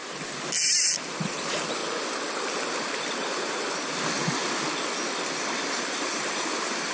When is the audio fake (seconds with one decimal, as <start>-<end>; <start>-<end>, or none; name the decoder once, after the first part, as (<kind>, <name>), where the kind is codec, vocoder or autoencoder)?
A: 1.3-1.8 (vocoder, BigVGAN v2); 5.7-6.9